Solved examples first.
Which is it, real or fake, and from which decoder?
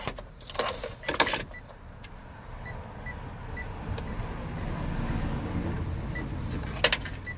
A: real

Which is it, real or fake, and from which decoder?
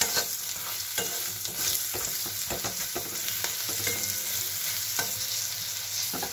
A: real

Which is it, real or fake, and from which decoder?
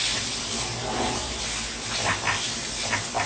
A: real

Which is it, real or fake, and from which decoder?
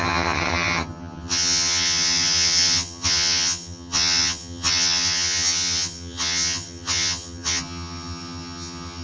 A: fake, vocoder, HiFi-GAN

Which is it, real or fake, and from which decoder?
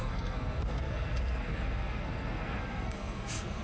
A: fake, codec, SNAC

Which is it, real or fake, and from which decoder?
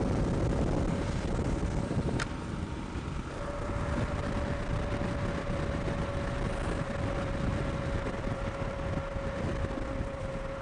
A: fake, vocoder, BigVGAN v2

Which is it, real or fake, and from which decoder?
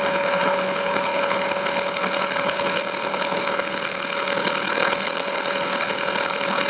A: fake, codec, HILCodec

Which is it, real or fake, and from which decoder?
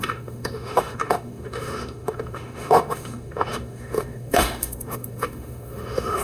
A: fake, autoencoder, DAC-VAE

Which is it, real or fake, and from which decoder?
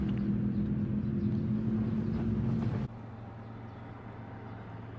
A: real